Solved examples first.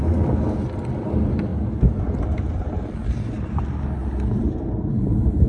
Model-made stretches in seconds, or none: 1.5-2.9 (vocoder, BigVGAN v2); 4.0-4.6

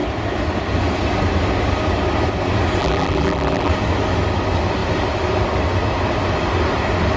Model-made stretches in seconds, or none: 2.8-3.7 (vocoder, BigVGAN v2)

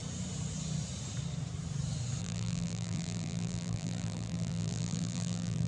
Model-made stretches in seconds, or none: 2.2-5.7 (vocoder, BigVGAN v2)